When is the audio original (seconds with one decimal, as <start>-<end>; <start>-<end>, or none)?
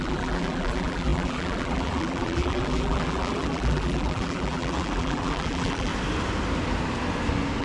5.9-7.6